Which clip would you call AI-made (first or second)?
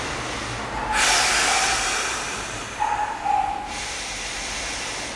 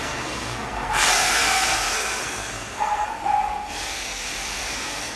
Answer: second